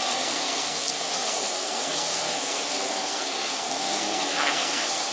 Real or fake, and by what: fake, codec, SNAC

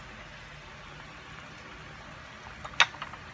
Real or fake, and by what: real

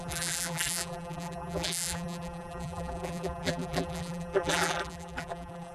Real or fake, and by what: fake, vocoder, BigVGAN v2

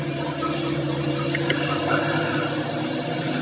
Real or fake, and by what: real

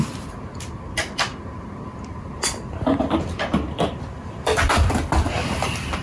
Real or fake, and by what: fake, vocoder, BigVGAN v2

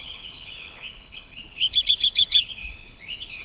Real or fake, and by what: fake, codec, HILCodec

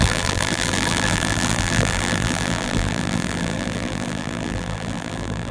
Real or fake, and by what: fake, vocoder, BigVGAN v2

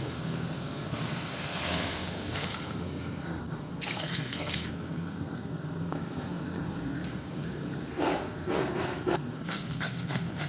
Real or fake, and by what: fake, codec, SNAC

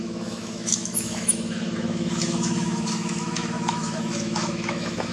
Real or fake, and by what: fake, autoencoder, DAC-VAE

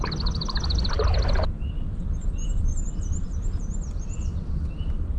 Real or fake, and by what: real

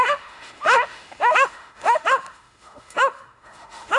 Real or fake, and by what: fake, autoencoder, DAC-VAE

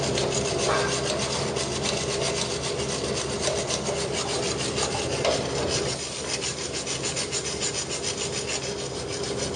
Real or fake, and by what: real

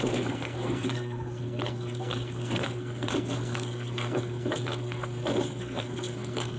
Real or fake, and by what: fake, codec, SNAC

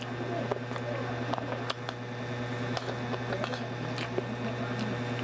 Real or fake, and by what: real